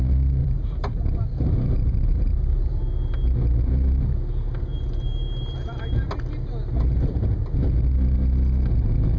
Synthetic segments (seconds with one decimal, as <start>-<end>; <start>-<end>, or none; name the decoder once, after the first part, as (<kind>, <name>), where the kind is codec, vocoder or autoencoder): 0.4-2.8 (vocoder, BigVGAN v2); 4.7-5.8